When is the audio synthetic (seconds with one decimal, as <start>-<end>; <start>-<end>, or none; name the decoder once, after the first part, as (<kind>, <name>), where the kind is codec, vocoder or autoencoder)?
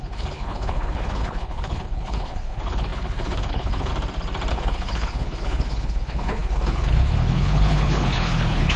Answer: 0.0-3.9 (codec, HILCodec); 4.5-8.8